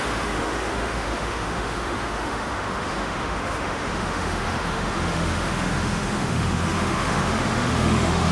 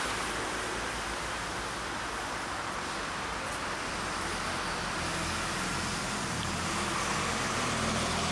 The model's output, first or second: first